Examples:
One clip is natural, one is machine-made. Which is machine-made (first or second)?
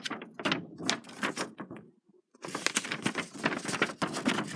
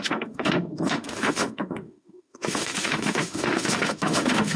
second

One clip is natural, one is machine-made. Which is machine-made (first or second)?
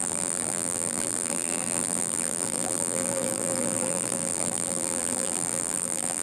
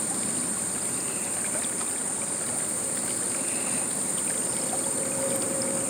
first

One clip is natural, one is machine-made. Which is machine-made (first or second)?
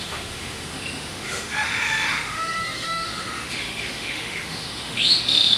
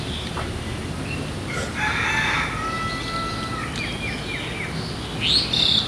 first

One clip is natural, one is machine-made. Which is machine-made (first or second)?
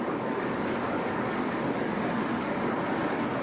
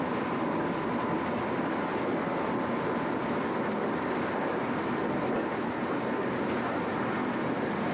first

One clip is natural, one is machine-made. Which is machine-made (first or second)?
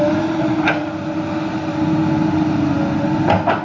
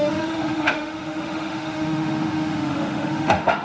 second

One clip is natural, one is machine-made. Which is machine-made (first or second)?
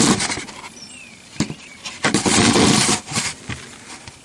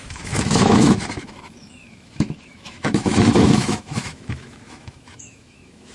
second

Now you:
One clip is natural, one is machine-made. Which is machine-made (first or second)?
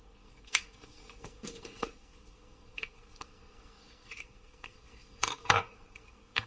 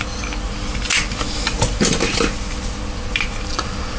first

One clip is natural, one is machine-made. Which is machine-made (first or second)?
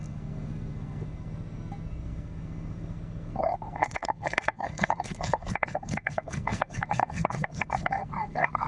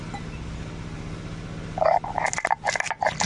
first